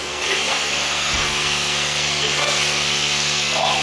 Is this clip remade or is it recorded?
remade